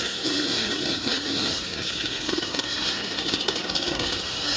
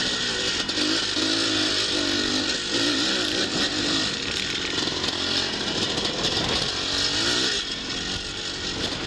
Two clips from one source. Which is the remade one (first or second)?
first